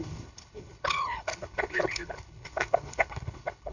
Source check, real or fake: fake